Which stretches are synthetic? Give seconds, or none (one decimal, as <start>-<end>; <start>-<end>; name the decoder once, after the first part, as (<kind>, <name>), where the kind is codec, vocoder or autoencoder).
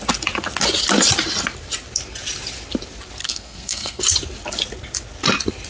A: 3.2-4.0 (codec, SNAC)